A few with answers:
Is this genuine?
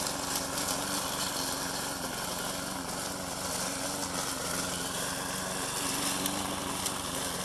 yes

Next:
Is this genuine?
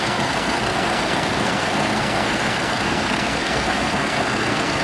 no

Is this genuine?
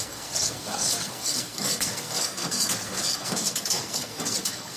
no